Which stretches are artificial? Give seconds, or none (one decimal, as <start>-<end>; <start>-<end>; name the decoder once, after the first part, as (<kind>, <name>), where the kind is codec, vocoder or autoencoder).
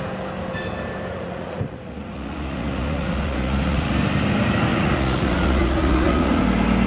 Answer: 1.1-3.9 (vocoder, Vocos); 4.7-6.4